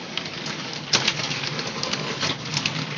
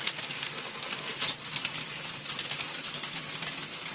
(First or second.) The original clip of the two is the second